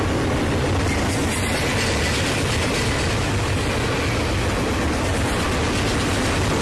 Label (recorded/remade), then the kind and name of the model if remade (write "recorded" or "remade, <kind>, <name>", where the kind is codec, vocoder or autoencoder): recorded